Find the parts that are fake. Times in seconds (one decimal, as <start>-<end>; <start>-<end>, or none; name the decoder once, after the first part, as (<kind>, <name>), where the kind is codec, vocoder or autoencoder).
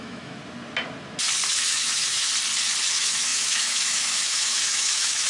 0.0-0.4 (autoencoder, DAC-VAE); 1.5-2.3; 2.8-5.3